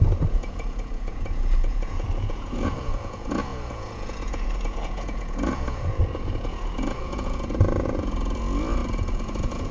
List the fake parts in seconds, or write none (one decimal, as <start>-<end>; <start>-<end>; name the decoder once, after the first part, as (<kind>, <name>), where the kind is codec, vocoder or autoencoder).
0.0-9.7 (vocoder, Vocos)